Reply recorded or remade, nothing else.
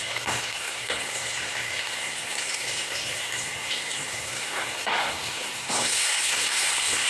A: remade